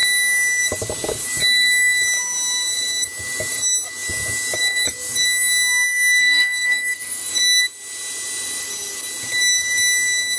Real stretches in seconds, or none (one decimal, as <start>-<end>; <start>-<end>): 0.0-6.2; 7.3-10.4